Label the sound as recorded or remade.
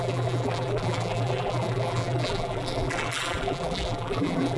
remade